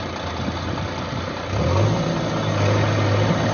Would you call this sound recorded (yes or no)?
yes